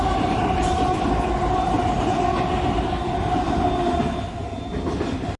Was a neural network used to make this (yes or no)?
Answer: no